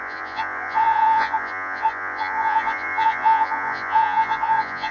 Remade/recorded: remade